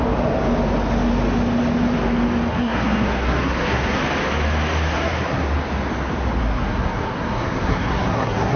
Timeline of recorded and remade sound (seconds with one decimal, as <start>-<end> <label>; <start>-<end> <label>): 0.0-2.5 recorded; 2.5-4.0 remade; 4.0-4.9 recorded; 4.9-5.5 remade; 5.5-6.4 recorded; 6.4-8.6 remade